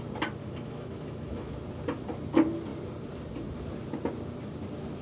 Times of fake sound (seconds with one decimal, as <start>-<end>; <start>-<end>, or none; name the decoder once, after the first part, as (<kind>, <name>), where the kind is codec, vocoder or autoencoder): 0.4-1.5 (autoencoder, DAC-VAE)